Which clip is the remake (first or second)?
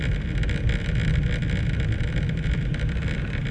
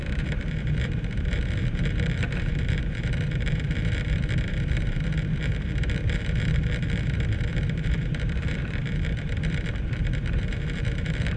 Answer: second